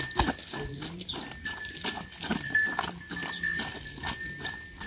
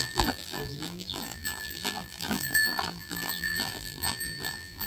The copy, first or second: second